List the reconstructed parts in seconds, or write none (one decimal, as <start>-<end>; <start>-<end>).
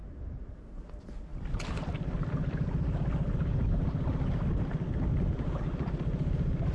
none